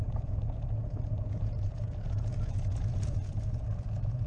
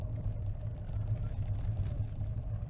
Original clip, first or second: second